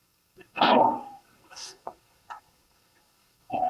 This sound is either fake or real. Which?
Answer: fake